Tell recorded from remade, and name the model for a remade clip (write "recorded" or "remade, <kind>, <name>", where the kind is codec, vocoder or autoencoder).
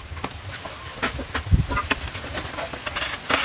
recorded